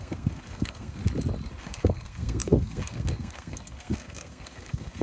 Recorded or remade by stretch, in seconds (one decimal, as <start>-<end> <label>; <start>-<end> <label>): 0.0-1.0 remade; 1.0-1.6 recorded; 1.6-5.0 remade